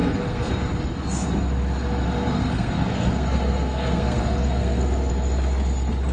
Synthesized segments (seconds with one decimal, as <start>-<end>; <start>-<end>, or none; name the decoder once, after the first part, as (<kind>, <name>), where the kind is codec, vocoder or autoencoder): 0.0-0.5 (codec, SNAC); 2.3-5.1